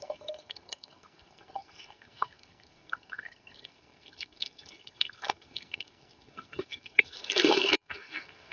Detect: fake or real fake